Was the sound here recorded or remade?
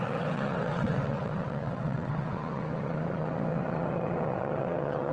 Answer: remade